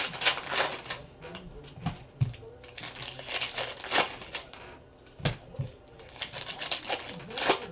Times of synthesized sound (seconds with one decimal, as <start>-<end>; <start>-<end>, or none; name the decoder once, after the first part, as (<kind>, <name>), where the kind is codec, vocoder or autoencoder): none